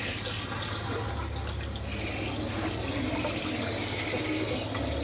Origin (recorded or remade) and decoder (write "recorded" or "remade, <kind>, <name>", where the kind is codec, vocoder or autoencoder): recorded